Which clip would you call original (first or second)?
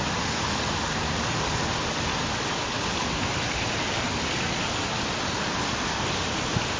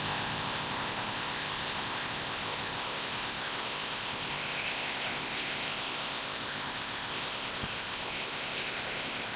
first